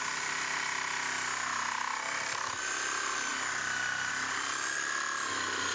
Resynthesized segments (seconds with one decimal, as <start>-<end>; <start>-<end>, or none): none